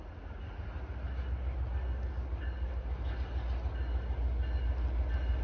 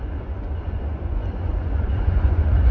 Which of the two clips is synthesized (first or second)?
second